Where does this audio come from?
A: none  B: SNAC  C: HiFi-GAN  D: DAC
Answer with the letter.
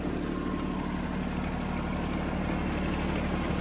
A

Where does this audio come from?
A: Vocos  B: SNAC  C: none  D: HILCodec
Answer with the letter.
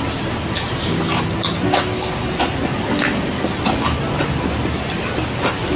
C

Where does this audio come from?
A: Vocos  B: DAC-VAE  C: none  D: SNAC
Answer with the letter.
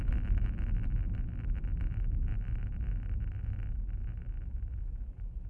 C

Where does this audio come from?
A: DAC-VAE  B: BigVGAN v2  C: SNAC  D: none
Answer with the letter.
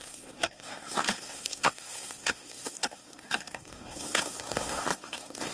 C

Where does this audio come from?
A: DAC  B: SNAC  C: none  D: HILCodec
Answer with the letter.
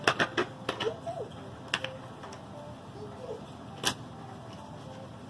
C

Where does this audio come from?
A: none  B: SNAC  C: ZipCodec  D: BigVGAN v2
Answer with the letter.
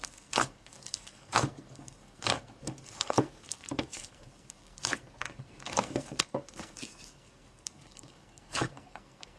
B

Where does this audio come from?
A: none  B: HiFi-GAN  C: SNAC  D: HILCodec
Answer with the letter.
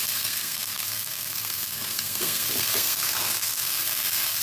C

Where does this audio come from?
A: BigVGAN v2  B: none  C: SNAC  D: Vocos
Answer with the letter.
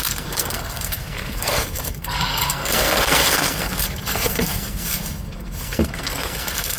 C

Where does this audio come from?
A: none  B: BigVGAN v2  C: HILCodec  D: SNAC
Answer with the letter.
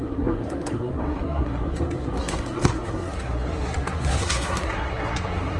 D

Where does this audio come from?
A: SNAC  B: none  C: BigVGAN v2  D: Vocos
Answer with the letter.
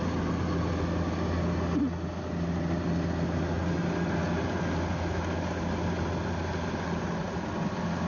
B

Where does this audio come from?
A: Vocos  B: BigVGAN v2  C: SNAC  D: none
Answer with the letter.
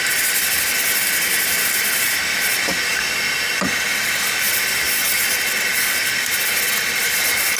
D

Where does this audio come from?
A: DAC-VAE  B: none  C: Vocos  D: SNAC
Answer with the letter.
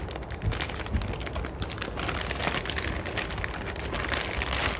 B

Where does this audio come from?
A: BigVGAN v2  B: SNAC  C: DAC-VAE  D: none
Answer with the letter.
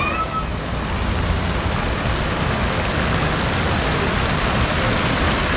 D